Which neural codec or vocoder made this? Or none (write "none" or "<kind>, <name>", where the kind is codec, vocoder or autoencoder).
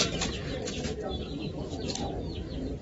none